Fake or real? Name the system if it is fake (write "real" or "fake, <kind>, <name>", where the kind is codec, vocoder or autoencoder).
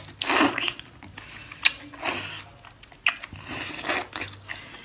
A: real